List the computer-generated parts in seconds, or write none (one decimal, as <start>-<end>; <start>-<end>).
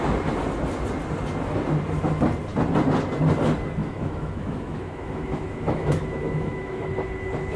3.8-6.9